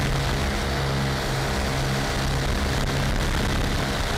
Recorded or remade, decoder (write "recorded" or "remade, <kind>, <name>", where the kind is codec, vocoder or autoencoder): recorded